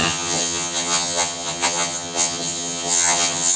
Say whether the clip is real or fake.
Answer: fake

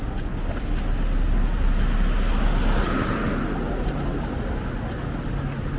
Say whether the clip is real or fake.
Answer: real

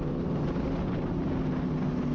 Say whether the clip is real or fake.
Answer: real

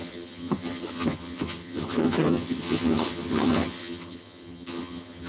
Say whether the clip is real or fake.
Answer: fake